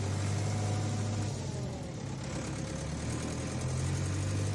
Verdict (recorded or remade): recorded